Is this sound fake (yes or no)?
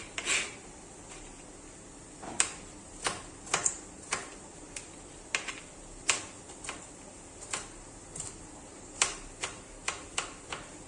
no